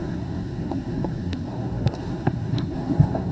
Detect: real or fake fake